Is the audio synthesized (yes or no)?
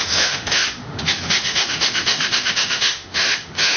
yes